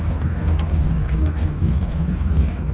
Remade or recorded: remade